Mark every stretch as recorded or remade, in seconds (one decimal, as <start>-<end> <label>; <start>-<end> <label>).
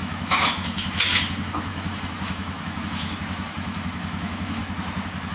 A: 0.0-4.6 remade; 4.6-5.3 recorded